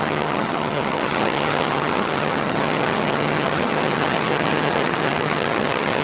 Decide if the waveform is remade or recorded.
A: remade